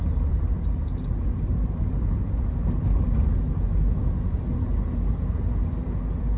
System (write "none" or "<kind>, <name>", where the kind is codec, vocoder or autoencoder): none